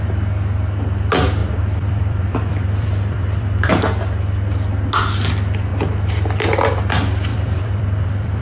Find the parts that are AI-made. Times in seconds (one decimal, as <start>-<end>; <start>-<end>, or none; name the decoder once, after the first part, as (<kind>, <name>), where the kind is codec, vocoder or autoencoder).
1.4-3.7 (vocoder, BigVGAN v2); 7.3-8.4